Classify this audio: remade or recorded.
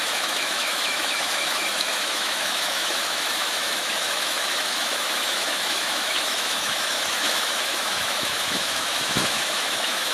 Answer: remade